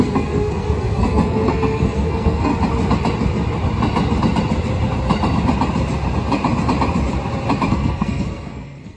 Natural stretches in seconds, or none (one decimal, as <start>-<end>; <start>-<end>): 2.5-7.7